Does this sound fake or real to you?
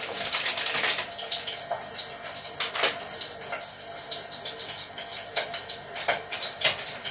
real